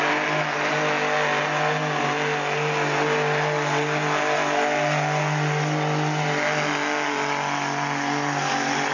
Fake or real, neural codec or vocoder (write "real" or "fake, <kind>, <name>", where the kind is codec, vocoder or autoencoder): real